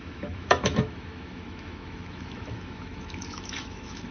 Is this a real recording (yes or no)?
no